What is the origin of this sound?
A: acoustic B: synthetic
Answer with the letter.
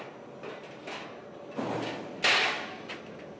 A